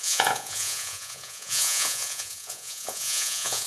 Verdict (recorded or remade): remade